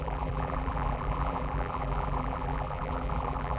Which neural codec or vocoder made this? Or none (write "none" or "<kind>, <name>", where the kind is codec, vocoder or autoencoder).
vocoder, BigVGAN v2